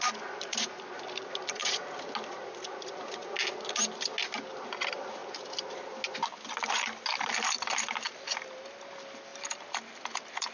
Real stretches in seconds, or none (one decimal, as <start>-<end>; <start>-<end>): 0.0-9.3; 10.1-10.5